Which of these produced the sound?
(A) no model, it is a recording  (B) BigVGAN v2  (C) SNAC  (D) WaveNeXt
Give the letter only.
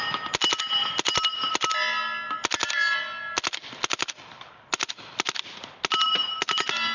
A